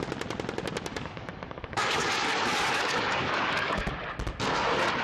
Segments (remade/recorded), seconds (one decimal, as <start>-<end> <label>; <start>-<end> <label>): 0.0-0.9 recorded; 0.9-3.9 remade; 3.9-5.0 recorded